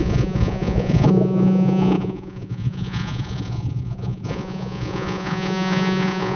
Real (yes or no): no